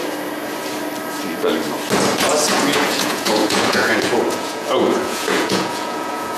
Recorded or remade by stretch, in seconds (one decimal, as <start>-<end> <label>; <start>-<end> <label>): 0.0-2.5 recorded; 2.5-6.4 remade